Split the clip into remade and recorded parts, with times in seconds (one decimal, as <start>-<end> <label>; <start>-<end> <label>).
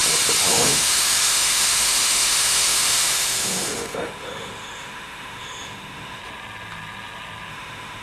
0.0-0.5 recorded; 0.5-6.2 remade; 6.2-7.5 recorded; 7.5-8.0 remade